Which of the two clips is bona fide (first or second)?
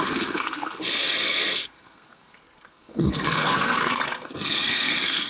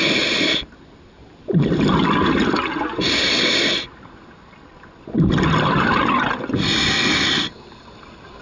second